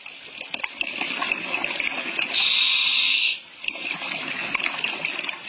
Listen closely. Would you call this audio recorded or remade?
recorded